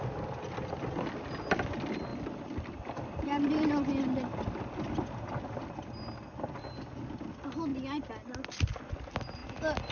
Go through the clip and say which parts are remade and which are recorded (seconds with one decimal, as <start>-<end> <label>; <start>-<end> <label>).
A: 0.0-2.1 recorded; 2.1-4.2 remade; 4.2-9.4 recorded; 9.4-9.9 remade

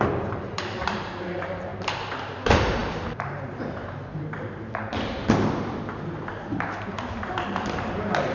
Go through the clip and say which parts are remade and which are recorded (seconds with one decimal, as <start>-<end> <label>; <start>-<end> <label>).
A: 0.0-1.7 remade; 1.7-2.2 recorded; 2.2-8.3 remade

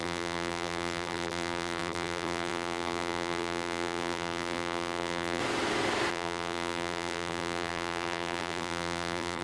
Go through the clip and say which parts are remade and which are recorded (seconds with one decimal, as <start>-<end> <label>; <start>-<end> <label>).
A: 0.0-5.4 remade; 5.4-6.1 recorded; 6.1-9.4 remade

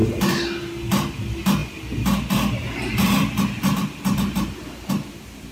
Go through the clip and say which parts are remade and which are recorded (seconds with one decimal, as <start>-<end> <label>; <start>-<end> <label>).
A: 0.0-5.5 recorded

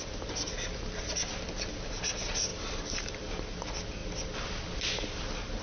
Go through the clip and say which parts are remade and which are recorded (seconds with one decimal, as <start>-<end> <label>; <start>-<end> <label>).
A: 0.0-2.5 recorded; 2.5-3.0 remade; 3.0-4.0 recorded; 4.0-5.6 remade